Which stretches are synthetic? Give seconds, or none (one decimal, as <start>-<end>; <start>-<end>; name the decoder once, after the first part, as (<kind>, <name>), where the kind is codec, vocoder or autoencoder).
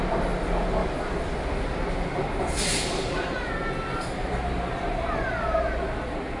0.8-4.3 (vocoder, BigVGAN v2)